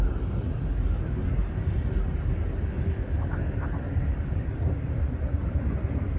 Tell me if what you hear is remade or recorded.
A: recorded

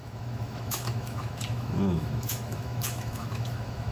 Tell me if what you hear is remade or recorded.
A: remade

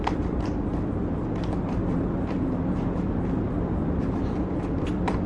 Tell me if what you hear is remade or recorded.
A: remade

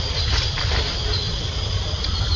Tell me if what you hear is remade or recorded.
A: recorded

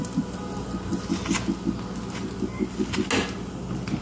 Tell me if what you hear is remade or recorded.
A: recorded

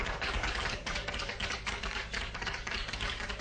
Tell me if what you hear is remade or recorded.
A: remade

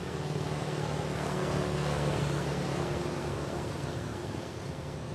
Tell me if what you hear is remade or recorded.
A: remade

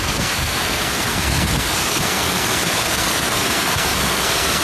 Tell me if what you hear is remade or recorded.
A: remade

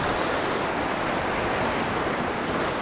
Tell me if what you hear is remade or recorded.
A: recorded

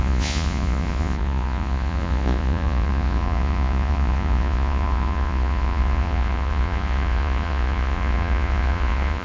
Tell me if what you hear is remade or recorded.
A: remade